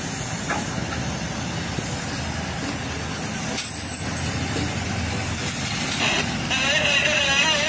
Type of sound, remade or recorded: recorded